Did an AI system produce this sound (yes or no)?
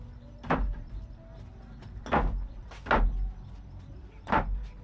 no